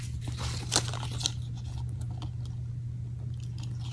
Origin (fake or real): real